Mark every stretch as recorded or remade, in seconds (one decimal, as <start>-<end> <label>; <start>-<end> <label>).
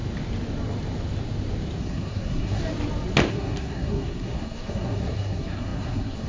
0.0-1.8 recorded; 1.8-2.6 remade; 2.6-3.3 recorded; 3.3-6.3 remade